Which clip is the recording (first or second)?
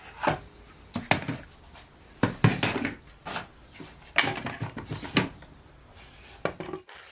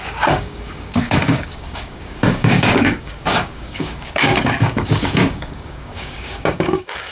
first